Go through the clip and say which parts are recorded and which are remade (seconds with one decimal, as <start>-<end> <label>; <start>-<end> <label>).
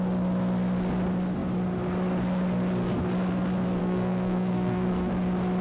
0.0-3.8 recorded; 3.8-5.1 remade; 5.1-5.6 recorded